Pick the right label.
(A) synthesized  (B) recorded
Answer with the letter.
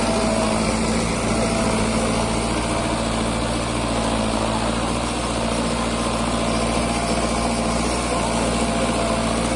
B